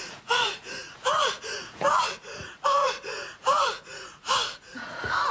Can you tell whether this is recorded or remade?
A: remade